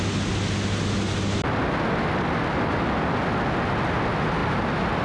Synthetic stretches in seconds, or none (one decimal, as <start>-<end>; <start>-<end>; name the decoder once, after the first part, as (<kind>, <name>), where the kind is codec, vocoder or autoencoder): none